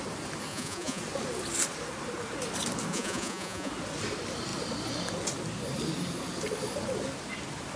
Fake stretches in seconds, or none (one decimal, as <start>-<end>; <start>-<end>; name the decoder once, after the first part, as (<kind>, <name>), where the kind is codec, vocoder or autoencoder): 0.5-1.0 (vocoder, Vocos); 2.9-3.7